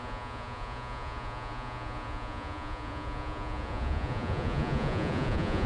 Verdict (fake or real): fake